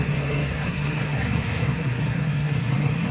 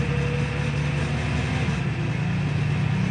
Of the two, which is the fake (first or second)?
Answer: first